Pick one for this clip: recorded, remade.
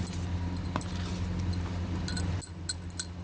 recorded